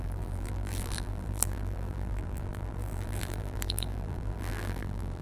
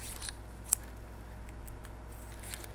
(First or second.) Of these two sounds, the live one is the second